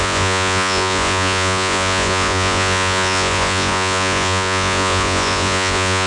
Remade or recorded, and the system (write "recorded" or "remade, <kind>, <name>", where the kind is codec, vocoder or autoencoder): remade, vocoder, Vocos